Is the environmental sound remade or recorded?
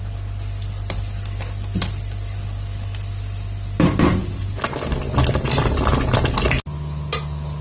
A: recorded